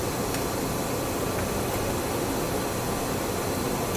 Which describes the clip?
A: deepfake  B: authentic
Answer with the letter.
B